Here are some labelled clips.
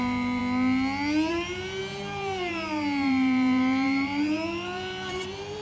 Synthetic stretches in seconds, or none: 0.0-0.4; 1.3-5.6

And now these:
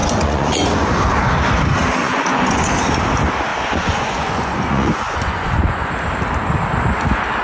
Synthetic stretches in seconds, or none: 0.0-0.9; 2.0-2.7; 3.5-5.9

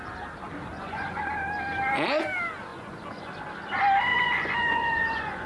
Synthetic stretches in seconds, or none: 0.7-1.2; 2.7-3.3; 4.1-5.5

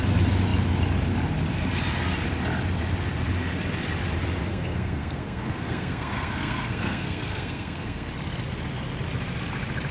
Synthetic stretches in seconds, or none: 4.5-8.1

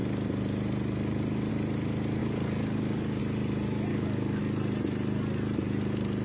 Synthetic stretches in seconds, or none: 2.2-3.2; 3.9-4.4

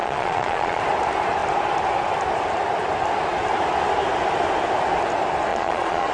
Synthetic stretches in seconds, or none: 0.0-0.8; 5.5-6.1